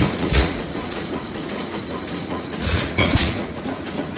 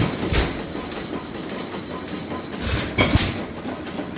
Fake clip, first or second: first